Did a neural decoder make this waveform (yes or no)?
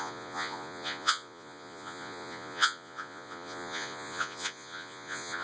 yes